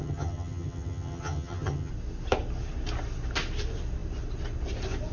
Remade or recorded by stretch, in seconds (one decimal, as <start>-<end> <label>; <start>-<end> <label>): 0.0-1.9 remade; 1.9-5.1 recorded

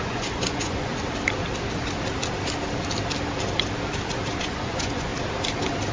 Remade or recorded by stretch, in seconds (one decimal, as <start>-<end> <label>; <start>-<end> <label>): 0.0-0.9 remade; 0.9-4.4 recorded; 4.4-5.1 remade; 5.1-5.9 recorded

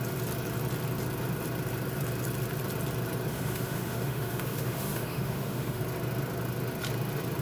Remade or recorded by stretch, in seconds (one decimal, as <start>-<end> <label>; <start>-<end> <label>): 0.0-3.3 recorded; 3.3-5.8 remade; 5.8-7.4 recorded

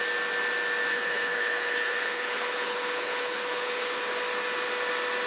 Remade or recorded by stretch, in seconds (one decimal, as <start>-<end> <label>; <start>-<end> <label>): 0.0-0.9 recorded; 0.9-4.0 remade; 4.0-5.3 recorded